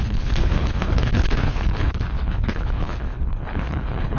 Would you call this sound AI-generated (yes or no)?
yes